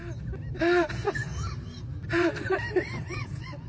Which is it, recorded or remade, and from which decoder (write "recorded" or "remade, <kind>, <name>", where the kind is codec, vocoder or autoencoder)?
recorded